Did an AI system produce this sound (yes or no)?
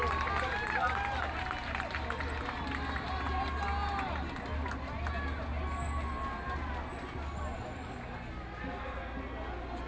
no